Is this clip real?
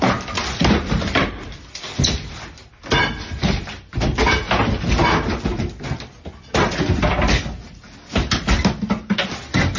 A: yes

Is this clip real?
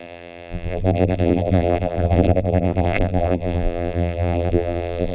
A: no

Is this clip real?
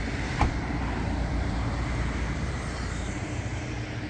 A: no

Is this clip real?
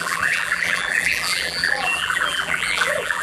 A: no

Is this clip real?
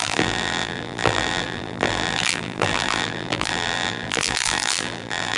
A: no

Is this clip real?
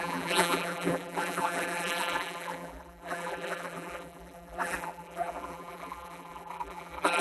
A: no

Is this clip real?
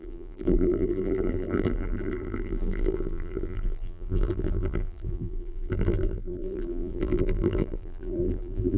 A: no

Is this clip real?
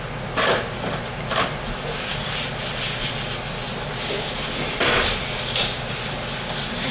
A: yes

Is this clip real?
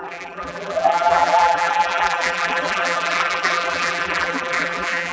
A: no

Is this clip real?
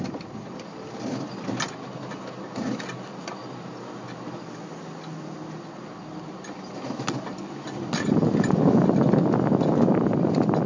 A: yes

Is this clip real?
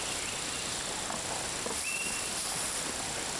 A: yes